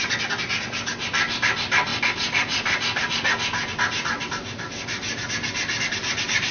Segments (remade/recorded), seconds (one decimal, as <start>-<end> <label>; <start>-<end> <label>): 0.0-6.5 recorded